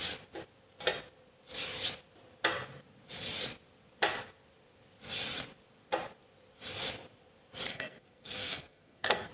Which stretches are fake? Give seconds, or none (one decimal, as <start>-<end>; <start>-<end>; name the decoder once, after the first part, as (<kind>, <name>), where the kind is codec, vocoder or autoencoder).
7.7-9.3 (codec, SNAC)